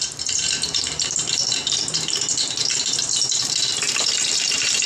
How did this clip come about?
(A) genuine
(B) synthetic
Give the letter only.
B